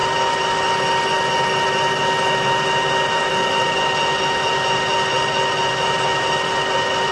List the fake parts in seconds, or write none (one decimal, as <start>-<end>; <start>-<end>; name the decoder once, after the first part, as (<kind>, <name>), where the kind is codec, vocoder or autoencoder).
none